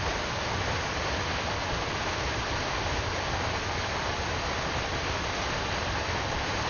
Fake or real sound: real